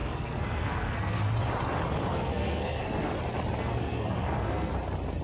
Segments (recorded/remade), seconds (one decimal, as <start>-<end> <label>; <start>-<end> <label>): 0.0-1.3 remade; 1.3-2.1 recorded; 2.1-3.2 remade; 3.2-3.6 recorded; 3.6-4.7 remade; 4.7-5.2 recorded